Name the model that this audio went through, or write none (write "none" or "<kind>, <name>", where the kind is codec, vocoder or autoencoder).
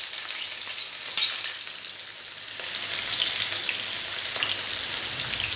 none